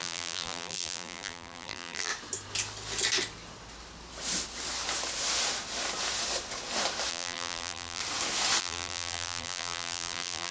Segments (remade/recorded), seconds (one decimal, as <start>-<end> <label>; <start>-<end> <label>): 0.0-2.1 remade; 2.1-7.1 recorded; 7.1-8.0 remade; 8.0-8.6 recorded; 8.6-10.5 remade